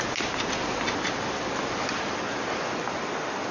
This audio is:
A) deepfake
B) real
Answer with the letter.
B